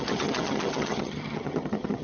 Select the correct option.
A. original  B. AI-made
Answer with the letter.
B